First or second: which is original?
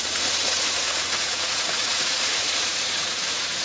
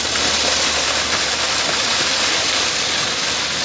second